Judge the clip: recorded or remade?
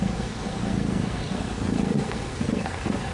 remade